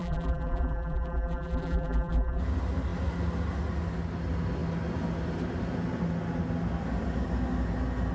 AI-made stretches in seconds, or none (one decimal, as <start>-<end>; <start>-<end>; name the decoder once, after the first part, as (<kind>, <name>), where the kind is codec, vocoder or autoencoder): 0.0-2.4 (vocoder, BigVGAN v2)